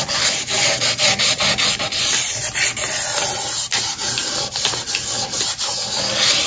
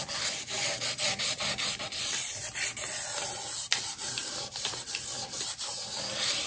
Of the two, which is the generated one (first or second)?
second